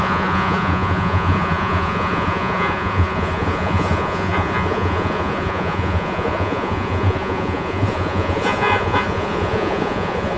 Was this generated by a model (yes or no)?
yes